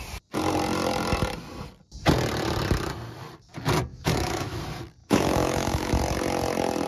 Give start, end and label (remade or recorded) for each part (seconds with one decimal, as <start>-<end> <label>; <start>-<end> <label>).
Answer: 0.0-3.9 recorded; 3.9-4.6 remade; 4.6-5.0 recorded; 5.0-5.9 remade; 5.9-6.9 recorded